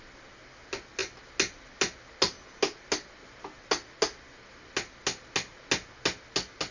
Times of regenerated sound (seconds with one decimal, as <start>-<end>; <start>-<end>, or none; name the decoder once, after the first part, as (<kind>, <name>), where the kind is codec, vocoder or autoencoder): none